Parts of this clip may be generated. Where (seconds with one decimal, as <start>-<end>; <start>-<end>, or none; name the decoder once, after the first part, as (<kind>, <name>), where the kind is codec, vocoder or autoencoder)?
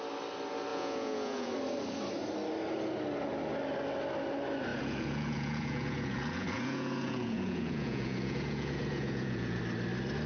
0.7-1.5 (vocoder, Vocos); 4.7-9.6